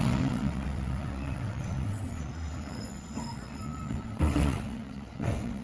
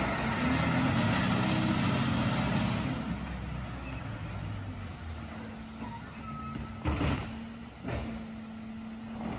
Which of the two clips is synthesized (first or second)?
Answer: first